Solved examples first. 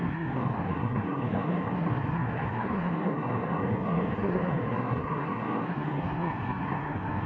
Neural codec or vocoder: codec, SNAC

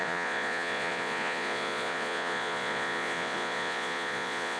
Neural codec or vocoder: vocoder, Vocos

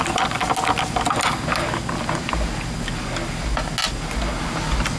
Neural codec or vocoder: none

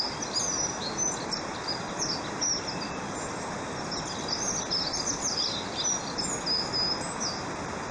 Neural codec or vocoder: none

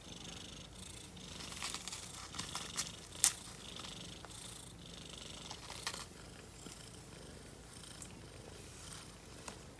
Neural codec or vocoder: none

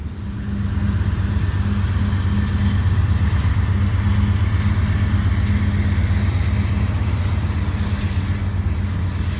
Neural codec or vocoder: none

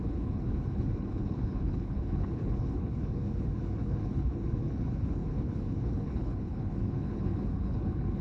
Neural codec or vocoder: codec, HILCodec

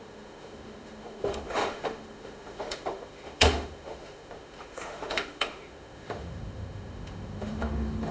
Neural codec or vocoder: autoencoder, DAC-VAE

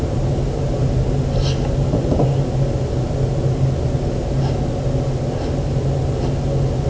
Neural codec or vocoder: none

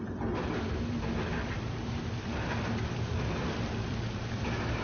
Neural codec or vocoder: vocoder, BigVGAN v2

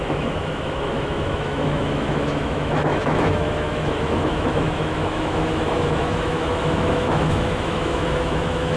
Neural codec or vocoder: autoencoder, DAC-VAE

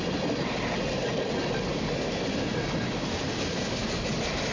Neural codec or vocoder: none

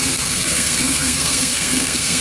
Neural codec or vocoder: codec, SNAC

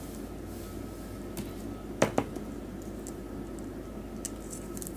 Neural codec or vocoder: none